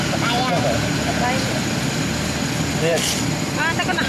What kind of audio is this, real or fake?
real